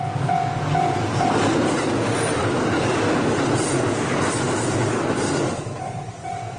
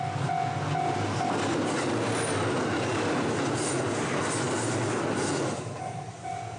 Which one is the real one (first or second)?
second